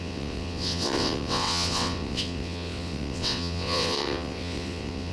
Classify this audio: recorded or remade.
remade